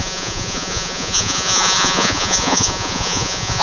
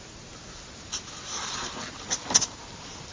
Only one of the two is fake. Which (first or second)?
first